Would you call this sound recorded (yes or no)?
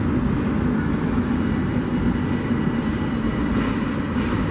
yes